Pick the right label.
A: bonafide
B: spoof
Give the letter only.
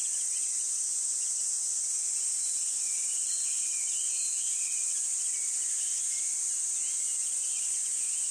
B